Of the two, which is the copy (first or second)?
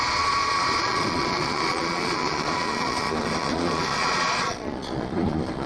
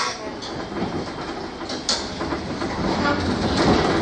first